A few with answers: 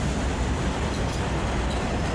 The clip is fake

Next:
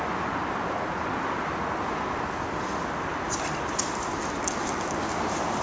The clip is real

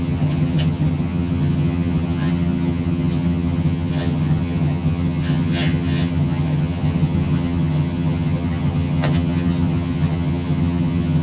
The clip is fake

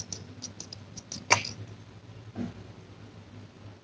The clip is real